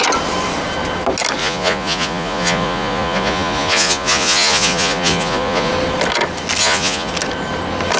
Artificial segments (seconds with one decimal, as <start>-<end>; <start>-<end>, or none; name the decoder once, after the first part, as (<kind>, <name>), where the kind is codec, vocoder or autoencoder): 1.4-5.7 (vocoder, Vocos); 6.6-7.1

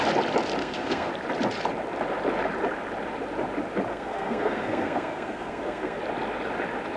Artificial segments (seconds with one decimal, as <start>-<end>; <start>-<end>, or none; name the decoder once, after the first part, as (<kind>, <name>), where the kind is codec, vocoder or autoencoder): 0.6-1.1 (codec, SNAC); 3.9-6.0

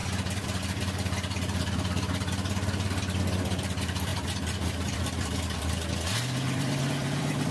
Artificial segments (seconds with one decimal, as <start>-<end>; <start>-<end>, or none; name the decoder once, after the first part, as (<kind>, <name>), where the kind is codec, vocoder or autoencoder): 0.0-7.5 (vocoder, BigVGAN v2)

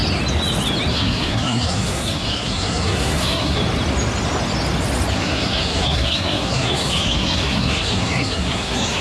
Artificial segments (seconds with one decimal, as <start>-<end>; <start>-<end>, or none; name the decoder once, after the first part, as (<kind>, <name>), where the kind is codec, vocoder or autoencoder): 0.9-3.6 (codec, SNAC); 5.1-9.0

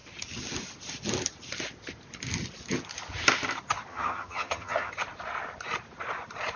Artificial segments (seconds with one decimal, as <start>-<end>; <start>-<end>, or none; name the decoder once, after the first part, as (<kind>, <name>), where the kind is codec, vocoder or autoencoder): 3.9-4.9 (vocoder, HiFi-GAN)

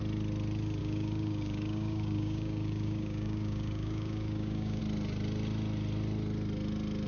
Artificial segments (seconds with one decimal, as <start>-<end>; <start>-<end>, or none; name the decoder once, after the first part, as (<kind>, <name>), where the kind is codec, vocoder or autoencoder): 0.8-4.8 (codec, DAC)

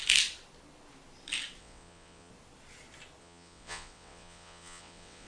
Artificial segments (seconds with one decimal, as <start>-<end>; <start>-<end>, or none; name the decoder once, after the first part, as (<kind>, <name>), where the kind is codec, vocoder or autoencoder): 1.6-2.3 (vocoder, WaveNeXt); 3.2-5.3

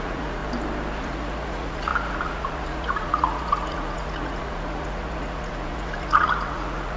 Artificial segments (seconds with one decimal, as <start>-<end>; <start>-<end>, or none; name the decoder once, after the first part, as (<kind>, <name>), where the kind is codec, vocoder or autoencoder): 0.0-0.4 (vocoder, Vocos); 1.0-7.0